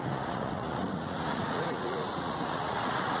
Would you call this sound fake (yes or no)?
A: yes